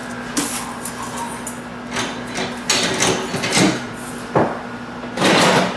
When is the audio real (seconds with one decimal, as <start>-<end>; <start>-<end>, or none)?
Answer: 0.0-5.8